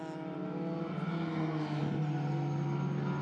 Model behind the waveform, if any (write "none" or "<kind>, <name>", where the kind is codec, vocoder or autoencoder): none